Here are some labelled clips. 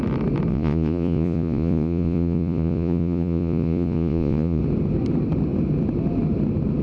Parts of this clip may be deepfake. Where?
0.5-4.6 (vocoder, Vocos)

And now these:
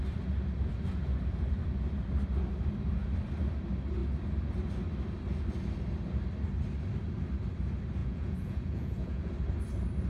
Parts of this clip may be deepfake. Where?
8.0-9.3 (vocoder, Vocos)

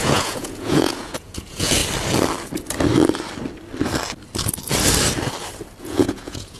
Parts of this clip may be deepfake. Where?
0.0-1.8 (vocoder, Vocos); 5.8-6.6

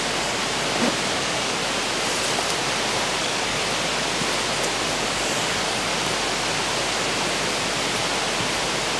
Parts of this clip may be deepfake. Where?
0.0-0.4 (codec, DAC); 1.1-1.6; 3.2-3.6; 4.9-5.9